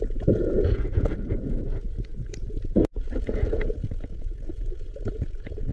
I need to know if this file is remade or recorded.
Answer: remade